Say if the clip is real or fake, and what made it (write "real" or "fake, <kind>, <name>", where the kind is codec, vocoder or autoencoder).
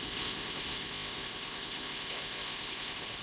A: fake, codec, ZipCodec